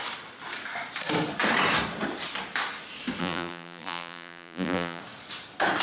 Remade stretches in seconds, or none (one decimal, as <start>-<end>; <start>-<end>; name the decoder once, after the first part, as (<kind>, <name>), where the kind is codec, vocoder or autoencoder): 3.2-5.0 (vocoder, BigVGAN v2)